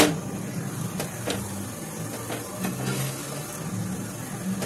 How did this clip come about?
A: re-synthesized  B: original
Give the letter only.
B